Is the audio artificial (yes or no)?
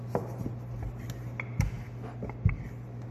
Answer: no